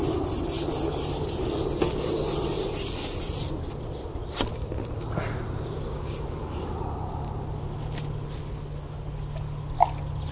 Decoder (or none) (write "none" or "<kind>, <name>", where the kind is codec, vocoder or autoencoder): none